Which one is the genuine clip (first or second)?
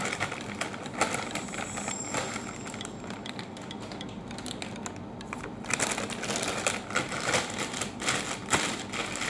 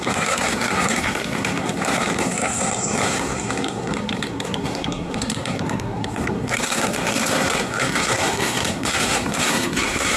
first